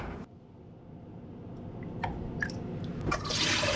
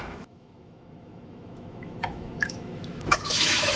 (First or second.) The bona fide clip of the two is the first